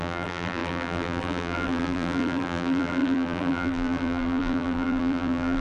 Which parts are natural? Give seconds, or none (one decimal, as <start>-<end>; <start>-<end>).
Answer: none